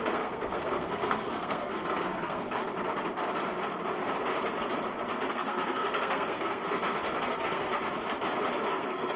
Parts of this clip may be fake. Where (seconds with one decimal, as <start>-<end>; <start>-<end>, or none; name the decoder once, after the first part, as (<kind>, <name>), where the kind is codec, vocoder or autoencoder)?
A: 0.0-2.6 (codec, SNAC); 5.3-6.8; 7.3-7.8; 8.7-9.2